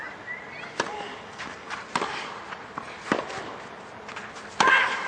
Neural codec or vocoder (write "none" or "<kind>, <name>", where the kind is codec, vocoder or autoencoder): none